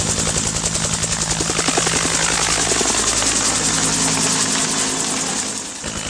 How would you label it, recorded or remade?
recorded